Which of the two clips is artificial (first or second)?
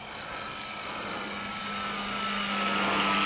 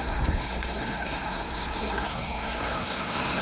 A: second